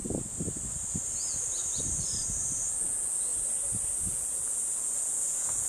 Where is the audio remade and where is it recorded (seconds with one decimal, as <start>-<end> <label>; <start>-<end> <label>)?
0.0-2.8 recorded; 2.8-3.3 remade; 3.3-4.1 recorded; 4.1-5.7 remade